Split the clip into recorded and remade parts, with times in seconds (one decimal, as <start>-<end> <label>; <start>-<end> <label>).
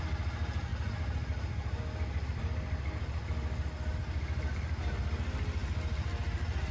0.0-6.7 recorded